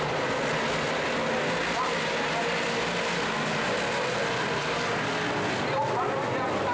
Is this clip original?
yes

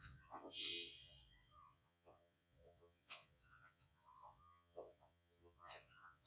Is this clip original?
no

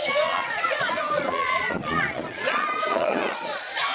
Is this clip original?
no